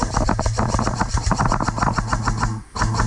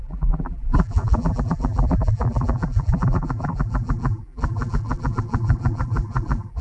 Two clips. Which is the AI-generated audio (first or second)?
second